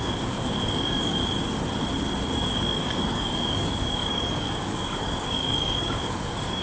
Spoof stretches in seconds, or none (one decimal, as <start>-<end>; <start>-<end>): 0.0-1.2; 2.3-6.6